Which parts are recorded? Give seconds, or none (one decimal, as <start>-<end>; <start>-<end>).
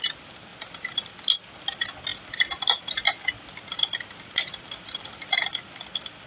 0.0-6.3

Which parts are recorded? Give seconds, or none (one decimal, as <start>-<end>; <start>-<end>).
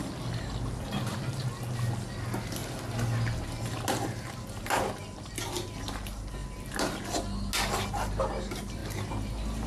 0.0-9.7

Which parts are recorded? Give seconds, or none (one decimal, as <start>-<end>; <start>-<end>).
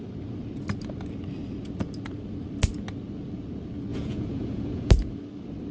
0.0-3.9; 4.9-5.7